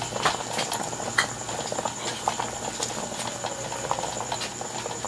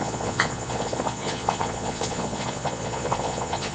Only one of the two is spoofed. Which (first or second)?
second